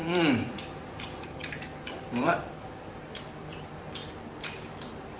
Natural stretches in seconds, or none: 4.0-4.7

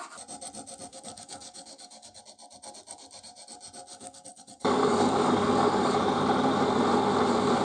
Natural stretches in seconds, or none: 0.0-0.9; 2.2-3.9; 6.0-7.6